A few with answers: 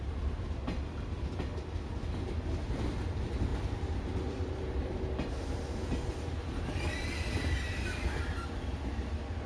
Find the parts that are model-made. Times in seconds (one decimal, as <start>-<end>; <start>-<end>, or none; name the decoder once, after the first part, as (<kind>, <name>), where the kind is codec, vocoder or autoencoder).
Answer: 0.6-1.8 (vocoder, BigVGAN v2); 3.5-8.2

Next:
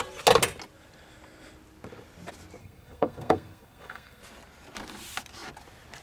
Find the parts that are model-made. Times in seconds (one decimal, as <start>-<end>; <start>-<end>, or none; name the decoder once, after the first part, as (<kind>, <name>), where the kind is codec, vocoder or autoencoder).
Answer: 2.6-4.2 (codec, SNAC)

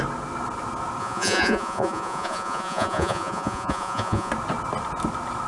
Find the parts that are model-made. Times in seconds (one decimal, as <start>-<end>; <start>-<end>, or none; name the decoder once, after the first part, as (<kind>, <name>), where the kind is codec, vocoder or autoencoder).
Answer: 1.0-4.3 (vocoder, Vocos)

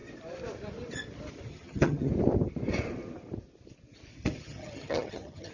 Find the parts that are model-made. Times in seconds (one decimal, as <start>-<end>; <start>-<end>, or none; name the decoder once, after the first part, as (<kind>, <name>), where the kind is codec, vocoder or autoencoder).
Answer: 1.5-2.1 (vocoder, HiFi-GAN); 4.1-5.5

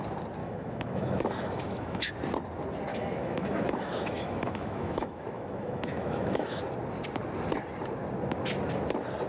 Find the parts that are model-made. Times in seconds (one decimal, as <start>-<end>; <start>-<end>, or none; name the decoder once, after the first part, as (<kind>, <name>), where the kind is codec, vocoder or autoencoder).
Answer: 0.4-2.1 (autoencoder, DAC-VAE); 2.9-6.6

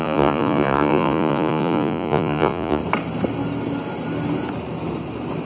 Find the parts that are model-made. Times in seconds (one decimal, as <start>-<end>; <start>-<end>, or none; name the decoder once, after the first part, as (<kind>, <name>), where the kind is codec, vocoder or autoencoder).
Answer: 0.0-2.8 (vocoder, Vocos)

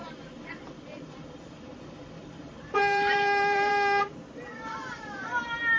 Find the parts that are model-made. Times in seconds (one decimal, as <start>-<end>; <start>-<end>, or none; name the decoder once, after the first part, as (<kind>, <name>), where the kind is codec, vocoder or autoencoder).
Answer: 0.0-1.7 (vocoder, BigVGAN v2); 2.2-5.8

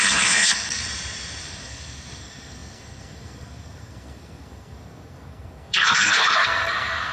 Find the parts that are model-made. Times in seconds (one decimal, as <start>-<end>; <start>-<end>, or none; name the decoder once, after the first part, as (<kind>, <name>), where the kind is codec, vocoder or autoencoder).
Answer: 0.0-0.8 (codec, SNAC); 1.4-7.1